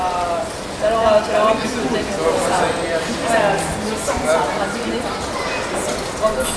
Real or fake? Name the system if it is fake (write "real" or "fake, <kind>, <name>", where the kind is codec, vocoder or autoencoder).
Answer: real